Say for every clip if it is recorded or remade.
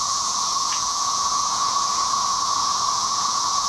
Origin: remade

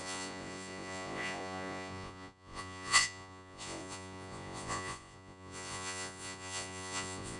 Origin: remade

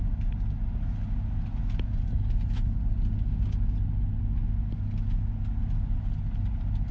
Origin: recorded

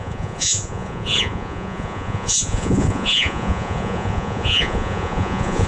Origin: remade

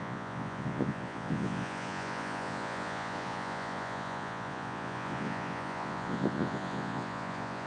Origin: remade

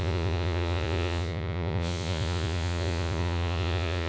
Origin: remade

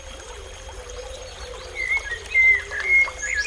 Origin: recorded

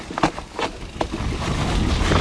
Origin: recorded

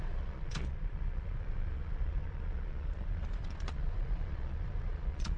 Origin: remade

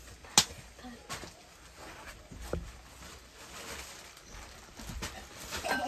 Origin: recorded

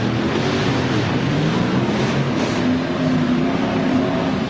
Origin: recorded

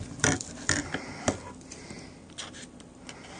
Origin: recorded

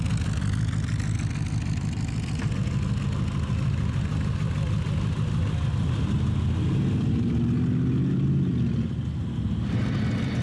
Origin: recorded